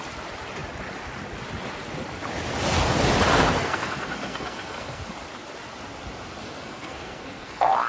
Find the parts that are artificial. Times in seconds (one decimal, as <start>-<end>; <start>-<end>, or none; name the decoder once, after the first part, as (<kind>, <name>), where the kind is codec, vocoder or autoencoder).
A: 3.3-5.0 (codec, SNAC); 6.4-7.9